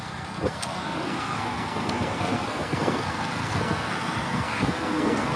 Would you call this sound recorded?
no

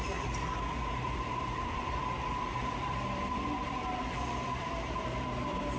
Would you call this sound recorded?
no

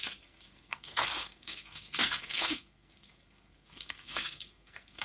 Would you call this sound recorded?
no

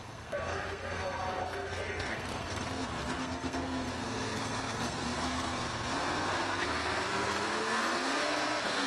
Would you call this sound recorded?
no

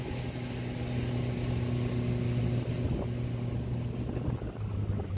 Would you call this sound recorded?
yes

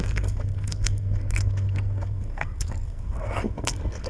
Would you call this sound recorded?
no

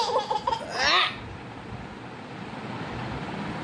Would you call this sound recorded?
yes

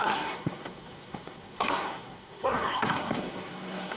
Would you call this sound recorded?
no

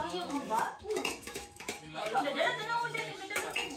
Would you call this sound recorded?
no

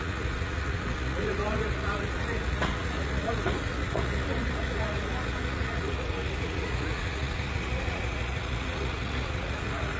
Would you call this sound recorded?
no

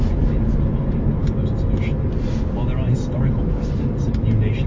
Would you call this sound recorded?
yes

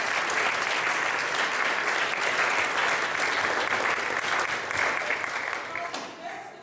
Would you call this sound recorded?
yes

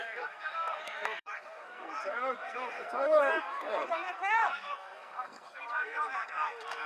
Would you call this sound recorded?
no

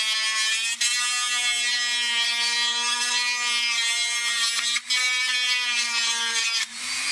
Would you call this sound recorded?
yes